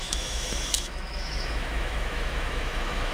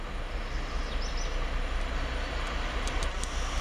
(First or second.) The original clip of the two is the second